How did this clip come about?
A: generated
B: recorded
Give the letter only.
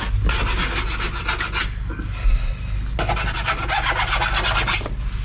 B